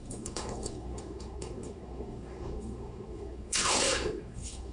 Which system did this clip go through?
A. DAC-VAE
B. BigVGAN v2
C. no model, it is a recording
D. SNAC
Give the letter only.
D